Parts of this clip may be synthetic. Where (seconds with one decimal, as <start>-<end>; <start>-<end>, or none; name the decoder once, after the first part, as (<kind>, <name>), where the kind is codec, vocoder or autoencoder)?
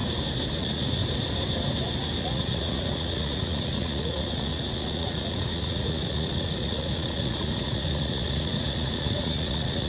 0.6-1.0 (vocoder, Vocos); 2.2-9.9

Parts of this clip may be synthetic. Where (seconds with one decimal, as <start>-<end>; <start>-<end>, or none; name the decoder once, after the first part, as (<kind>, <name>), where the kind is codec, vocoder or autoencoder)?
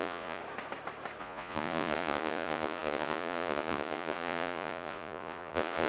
0.0-0.4 (vocoder, Vocos); 1.2-5.9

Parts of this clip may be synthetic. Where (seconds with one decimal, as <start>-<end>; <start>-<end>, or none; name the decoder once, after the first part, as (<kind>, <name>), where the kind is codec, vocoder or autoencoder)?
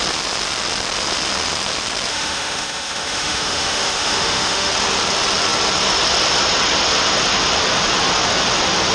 2.1-4.7 (autoencoder, DAC-VAE)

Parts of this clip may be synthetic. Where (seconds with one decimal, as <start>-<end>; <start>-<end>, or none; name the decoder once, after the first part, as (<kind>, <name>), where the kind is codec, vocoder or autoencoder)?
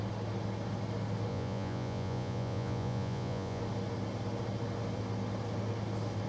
1.3-3.6 (vocoder, Vocos)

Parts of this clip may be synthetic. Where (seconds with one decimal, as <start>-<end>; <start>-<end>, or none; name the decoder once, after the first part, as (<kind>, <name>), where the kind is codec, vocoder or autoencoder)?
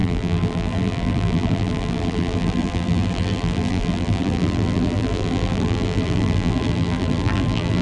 0.0-7.8 (vocoder, BigVGAN v2)